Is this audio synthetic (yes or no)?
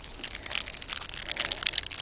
no